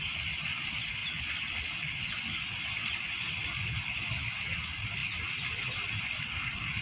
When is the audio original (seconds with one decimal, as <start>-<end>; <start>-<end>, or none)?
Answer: 0.0-6.8